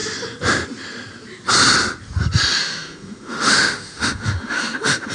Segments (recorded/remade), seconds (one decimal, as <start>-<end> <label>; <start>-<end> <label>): 0.0-2.6 recorded; 2.6-5.1 remade